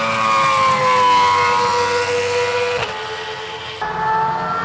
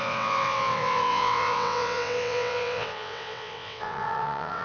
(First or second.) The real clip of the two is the first